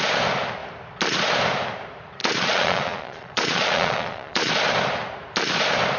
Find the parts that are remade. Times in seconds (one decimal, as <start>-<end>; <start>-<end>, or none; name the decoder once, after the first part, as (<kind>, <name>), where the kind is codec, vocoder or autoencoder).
2.2-4.5 (vocoder, Vocos)